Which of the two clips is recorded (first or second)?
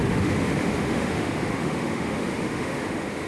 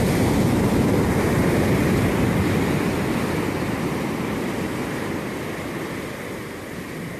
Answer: second